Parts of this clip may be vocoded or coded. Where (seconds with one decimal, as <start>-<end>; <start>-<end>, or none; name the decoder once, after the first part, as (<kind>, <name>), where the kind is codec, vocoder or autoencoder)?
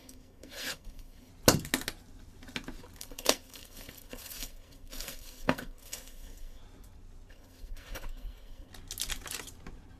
0.0-1.3 (codec, SNAC); 3.0-6.6; 7.3-8.7